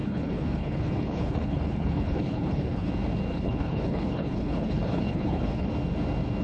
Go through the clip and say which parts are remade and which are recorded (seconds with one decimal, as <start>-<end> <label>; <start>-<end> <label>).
0.0-2.9 remade; 2.9-3.3 recorded; 3.3-5.7 remade; 5.7-6.4 recorded